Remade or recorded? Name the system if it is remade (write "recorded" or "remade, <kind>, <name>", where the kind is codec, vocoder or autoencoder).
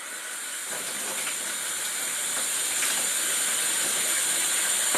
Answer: remade, vocoder, BigVGAN v2